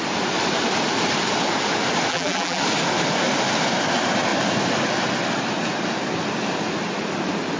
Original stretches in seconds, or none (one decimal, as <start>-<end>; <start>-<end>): 0.0-2.1; 2.6-7.6